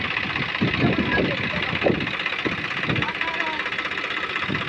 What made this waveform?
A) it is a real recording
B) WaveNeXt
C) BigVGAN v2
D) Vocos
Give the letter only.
A